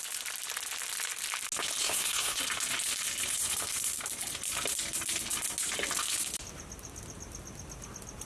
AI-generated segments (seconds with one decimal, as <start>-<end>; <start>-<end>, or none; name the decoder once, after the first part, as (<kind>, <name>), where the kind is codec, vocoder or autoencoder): 1.8-2.4 (codec, SNAC)